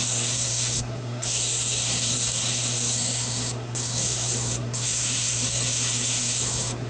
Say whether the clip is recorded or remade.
remade